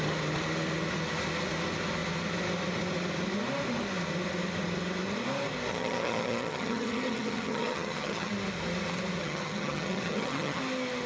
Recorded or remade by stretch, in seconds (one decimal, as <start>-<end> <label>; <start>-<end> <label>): 0.0-5.7 recorded; 5.7-8.3 remade; 8.3-9.2 recorded; 9.2-10.6 remade; 10.6-11.1 recorded